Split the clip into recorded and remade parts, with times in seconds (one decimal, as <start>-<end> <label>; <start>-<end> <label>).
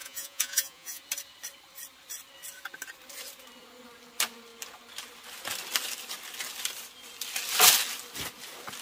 0.0-1.0 remade; 1.0-8.8 recorded